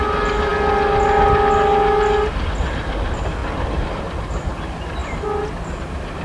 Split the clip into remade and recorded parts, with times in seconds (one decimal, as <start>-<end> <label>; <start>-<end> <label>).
0.0-6.2 recorded